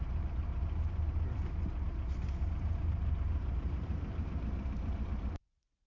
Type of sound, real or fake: fake